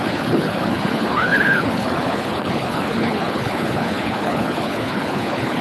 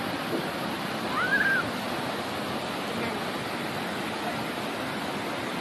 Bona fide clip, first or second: second